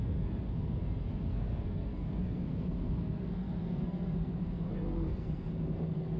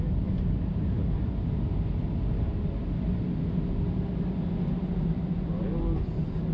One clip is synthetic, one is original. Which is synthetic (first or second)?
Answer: first